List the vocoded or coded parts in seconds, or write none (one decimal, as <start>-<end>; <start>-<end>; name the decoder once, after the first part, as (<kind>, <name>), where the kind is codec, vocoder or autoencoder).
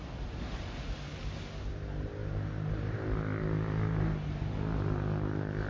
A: none